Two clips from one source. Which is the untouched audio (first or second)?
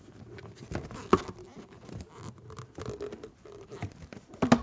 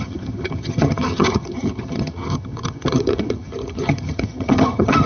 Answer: first